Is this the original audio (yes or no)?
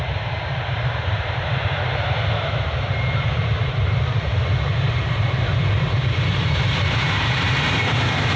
no